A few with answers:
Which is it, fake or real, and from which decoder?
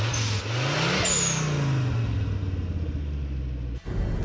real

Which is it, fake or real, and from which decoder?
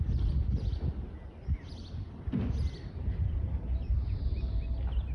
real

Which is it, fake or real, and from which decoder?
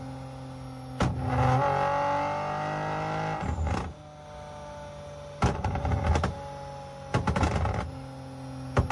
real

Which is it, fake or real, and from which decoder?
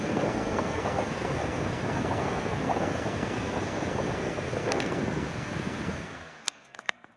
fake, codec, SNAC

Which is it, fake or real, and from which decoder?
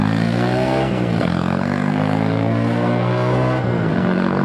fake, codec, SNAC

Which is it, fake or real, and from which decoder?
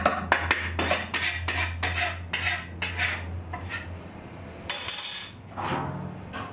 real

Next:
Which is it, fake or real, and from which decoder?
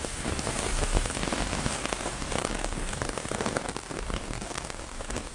fake, codec, DAC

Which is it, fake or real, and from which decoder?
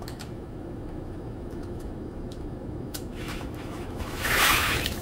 fake, autoencoder, DAC-VAE